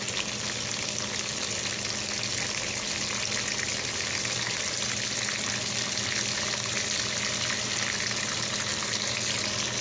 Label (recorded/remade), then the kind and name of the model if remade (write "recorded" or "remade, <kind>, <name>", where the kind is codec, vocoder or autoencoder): recorded